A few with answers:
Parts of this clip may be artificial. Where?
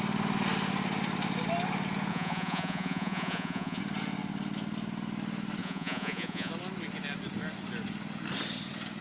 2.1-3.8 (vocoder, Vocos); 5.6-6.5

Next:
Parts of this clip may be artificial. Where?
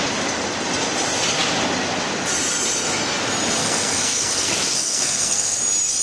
3.6-5.6 (codec, SNAC)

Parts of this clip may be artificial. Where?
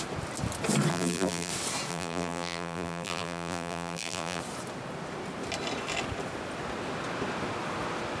0.9-1.5 (vocoder, BigVGAN v2); 1.9-4.4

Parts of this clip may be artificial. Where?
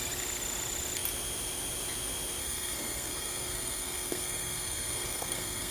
2.4-5.7 (codec, SNAC)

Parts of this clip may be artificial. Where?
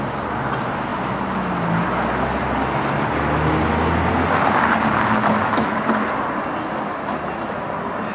none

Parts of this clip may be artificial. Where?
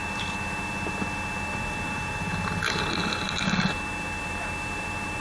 none